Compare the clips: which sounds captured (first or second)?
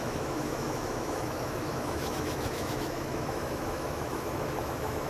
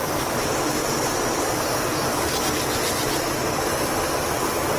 second